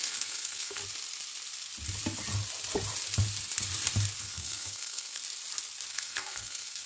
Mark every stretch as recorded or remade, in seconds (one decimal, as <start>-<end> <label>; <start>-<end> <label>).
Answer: 0.0-0.8 remade; 0.8-4.2 recorded; 4.2-5.2 remade; 5.2-5.9 recorded; 5.9-6.9 remade